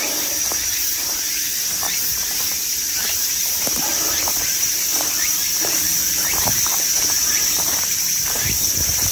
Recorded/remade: remade